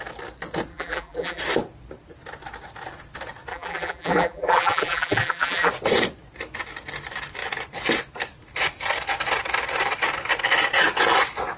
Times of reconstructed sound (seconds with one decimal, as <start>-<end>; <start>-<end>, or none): 0.7-1.4; 3.5-5.7